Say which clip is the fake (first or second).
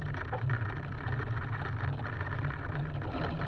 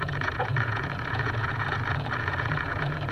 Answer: second